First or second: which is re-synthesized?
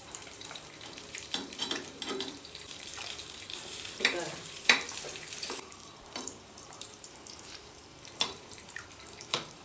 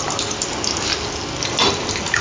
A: first